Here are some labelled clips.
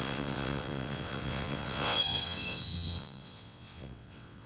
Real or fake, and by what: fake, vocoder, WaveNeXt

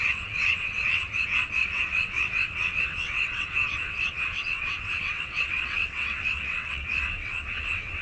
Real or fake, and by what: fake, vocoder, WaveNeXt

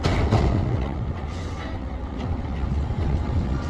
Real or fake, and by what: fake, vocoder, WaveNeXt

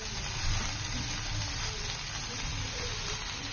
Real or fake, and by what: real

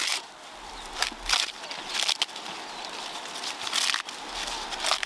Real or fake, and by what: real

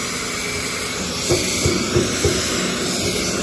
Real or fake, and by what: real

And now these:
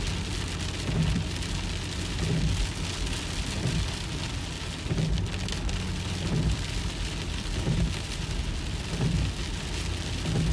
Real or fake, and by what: real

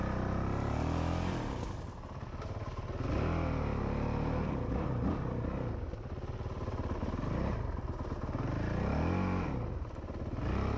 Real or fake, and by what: real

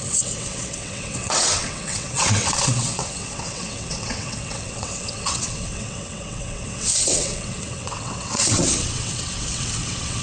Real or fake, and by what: fake, vocoder, WaveNeXt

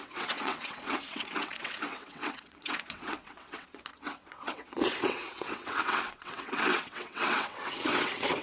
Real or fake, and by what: fake, vocoder, WaveNeXt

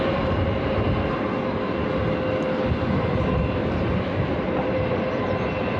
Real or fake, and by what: real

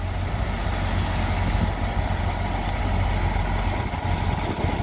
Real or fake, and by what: real